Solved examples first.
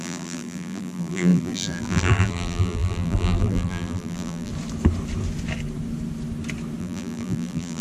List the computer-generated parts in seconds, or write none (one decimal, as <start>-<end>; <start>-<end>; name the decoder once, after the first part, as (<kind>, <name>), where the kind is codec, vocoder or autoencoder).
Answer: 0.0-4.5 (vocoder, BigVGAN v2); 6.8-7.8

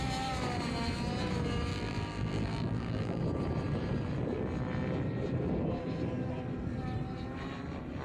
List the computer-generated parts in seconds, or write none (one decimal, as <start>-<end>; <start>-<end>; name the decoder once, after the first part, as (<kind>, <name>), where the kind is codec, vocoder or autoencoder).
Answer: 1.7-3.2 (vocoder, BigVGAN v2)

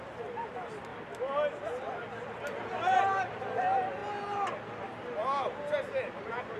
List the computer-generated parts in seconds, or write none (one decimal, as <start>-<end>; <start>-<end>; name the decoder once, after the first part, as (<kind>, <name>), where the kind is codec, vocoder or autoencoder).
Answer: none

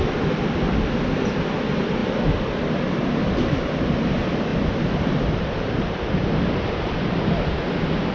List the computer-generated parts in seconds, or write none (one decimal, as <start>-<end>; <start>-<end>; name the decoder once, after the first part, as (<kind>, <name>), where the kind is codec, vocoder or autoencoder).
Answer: 4.5-6.1 (vocoder, BigVGAN v2)

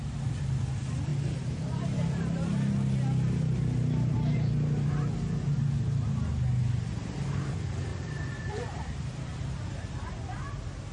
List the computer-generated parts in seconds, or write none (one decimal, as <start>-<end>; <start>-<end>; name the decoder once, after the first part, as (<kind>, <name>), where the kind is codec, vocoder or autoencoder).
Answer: 7.9-9.8 (vocoder, BigVGAN v2)